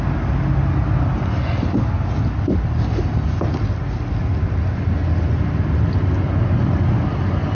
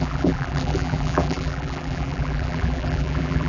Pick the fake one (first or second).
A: second